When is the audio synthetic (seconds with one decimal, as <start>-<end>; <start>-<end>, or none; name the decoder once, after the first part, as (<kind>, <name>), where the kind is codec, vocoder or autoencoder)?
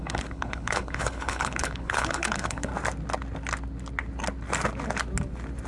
0.0-2.7 (codec, HILCodec)